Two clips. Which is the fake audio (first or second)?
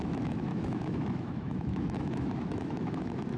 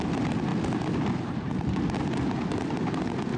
first